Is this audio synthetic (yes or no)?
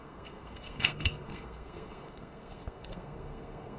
yes